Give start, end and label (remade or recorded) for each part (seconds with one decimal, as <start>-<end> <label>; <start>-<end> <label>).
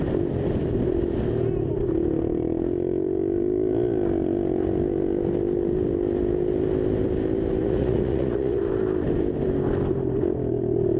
0.0-7.6 recorded; 7.6-8.6 remade; 8.6-11.0 recorded